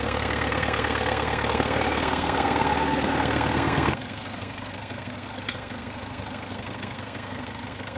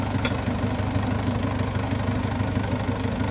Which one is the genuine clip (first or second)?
second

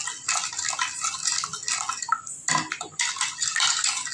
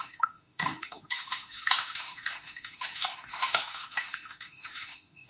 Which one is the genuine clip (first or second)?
first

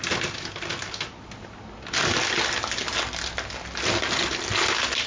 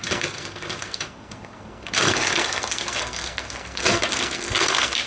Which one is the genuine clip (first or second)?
first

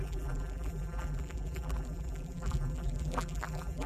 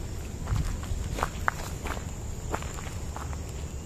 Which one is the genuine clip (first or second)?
second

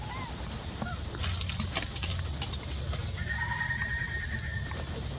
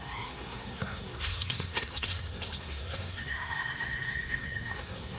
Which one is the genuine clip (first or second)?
first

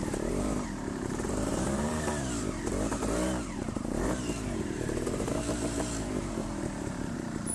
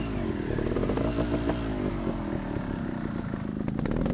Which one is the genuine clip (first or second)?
second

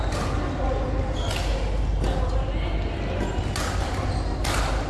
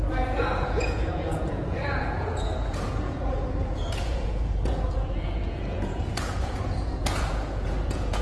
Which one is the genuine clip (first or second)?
first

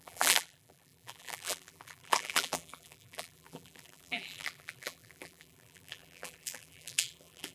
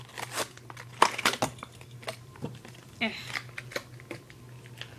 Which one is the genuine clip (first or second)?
second